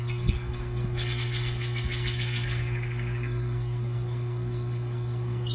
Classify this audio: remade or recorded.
remade